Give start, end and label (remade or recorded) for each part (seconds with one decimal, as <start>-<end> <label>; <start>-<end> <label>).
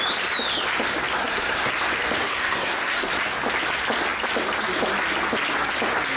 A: 0.0-1.2 recorded; 1.2-1.7 remade; 1.7-2.2 recorded; 2.2-3.1 remade; 3.1-6.2 recorded